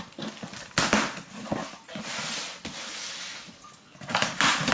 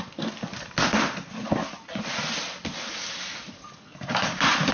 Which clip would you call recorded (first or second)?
first